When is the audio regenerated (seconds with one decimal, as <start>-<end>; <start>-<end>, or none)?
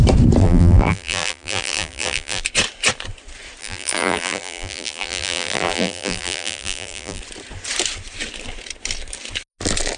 0.4-2.4; 3.6-7.2